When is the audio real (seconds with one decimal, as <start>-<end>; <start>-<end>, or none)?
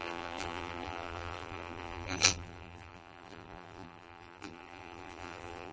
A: none